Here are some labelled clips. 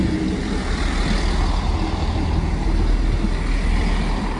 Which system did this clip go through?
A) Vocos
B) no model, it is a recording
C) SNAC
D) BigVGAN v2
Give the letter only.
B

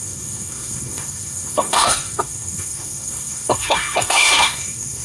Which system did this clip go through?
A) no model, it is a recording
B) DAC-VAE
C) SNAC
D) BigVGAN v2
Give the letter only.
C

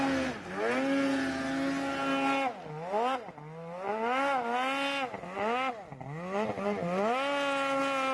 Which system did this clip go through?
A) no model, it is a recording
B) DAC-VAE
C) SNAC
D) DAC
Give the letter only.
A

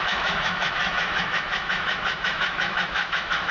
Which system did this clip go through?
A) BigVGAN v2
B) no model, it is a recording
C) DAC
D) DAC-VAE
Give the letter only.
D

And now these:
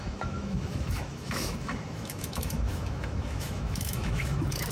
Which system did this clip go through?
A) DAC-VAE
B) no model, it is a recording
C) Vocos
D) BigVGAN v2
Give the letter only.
A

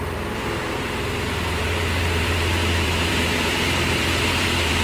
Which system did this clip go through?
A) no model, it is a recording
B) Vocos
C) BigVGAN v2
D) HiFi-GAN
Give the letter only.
C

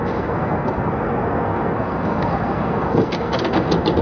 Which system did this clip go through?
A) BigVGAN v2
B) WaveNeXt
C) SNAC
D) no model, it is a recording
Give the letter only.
C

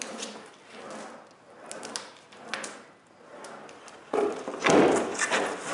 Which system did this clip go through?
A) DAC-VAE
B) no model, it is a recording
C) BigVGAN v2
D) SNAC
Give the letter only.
B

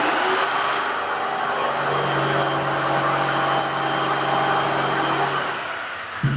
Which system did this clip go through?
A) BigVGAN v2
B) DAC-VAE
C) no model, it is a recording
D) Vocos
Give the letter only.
C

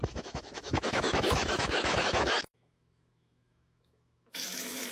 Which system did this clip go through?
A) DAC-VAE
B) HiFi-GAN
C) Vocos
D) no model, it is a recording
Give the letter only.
A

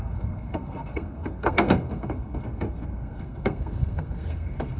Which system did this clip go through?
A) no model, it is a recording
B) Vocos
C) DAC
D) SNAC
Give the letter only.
D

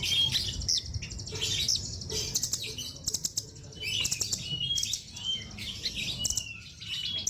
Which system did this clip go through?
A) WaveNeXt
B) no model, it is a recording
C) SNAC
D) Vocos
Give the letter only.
B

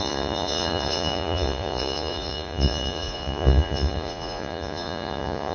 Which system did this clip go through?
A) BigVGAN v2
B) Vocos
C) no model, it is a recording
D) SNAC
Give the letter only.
B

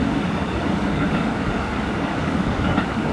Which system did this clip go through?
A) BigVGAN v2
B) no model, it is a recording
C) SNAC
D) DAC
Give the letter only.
D